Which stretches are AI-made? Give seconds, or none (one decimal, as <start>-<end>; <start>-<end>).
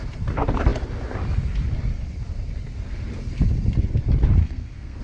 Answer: 4.4-5.0